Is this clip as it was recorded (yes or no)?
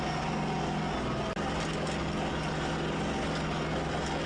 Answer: yes